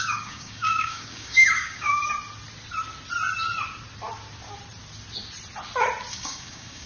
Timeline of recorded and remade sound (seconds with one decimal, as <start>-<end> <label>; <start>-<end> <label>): 0.0-2.0 remade; 2.0-6.1 recorded; 6.1-6.9 remade